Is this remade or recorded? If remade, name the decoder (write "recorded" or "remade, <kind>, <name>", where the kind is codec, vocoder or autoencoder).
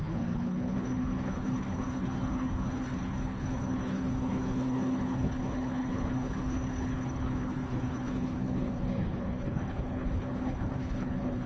remade, codec, HILCodec